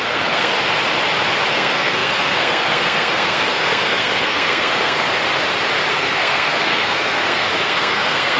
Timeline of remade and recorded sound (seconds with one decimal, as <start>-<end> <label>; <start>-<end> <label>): 0.0-0.5 remade; 0.5-1.5 recorded; 1.5-5.1 remade; 5.1-5.9 recorded; 5.9-8.4 remade